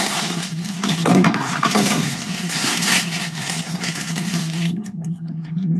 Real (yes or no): no